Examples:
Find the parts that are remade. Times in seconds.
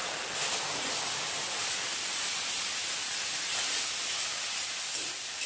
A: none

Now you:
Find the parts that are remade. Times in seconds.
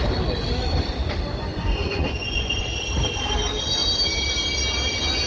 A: 1.5-2.6 (vocoder, Vocos)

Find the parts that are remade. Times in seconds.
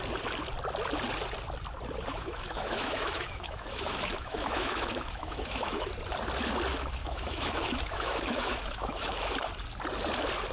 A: 2.1-5.9 (autoencoder, DAC-VAE); 7.0-9.3